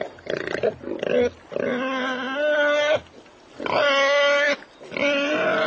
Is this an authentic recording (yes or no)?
yes